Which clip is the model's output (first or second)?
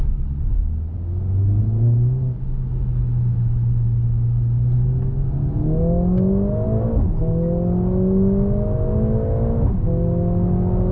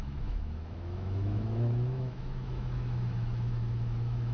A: second